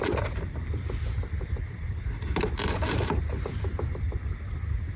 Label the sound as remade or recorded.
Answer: recorded